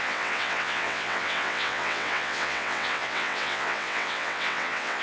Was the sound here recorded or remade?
remade